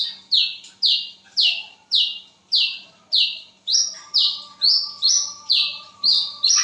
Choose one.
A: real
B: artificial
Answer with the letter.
A